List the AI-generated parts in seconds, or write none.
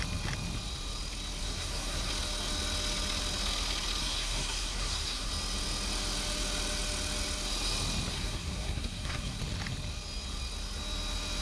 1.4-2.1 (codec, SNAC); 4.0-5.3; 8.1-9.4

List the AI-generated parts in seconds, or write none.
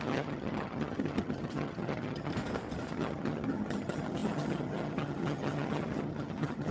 0.0-2.3 (vocoder, HiFi-GAN); 2.9-6.7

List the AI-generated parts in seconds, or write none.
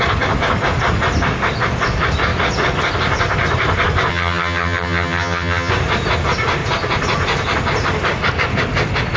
4.1-5.7 (vocoder, HiFi-GAN)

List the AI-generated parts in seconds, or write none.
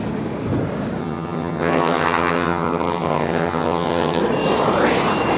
1.0-4.2 (vocoder, HiFi-GAN)